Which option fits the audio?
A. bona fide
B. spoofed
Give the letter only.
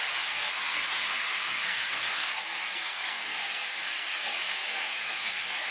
B